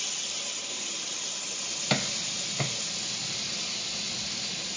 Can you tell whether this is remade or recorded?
recorded